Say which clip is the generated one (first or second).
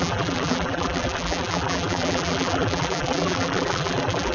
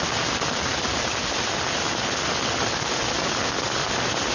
first